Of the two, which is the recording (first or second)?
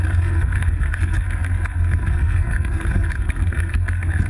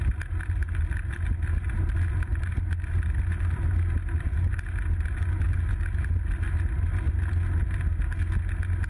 second